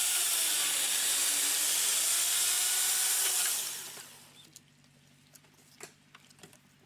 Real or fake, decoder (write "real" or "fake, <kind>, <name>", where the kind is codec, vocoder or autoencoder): real